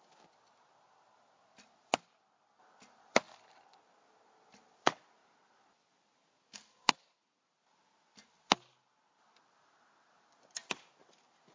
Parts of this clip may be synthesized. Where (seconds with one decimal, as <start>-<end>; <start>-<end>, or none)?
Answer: none